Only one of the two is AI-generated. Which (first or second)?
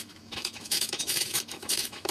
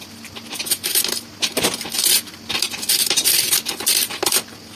first